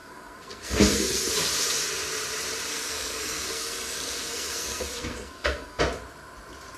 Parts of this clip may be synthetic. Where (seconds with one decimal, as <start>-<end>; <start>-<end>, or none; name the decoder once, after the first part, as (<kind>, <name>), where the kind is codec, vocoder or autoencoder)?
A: 0.0-1.3 (codec, SNAC); 2.7-5.8